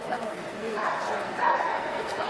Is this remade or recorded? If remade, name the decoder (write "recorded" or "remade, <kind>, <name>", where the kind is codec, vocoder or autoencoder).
remade, codec, SNAC